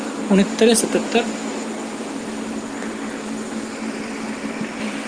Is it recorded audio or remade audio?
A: recorded